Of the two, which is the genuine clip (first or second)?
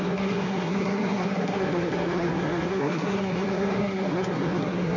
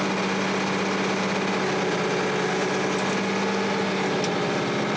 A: second